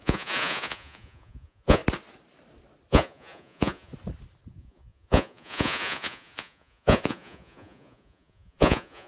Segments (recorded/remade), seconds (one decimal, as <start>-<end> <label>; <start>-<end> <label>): 0.0-1.8 remade; 1.8-2.9 recorded; 2.9-3.9 remade; 3.9-4.5 recorded; 4.5-9.1 remade